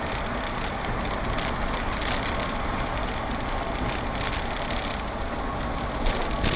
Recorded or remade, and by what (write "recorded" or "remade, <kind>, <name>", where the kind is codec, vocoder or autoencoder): recorded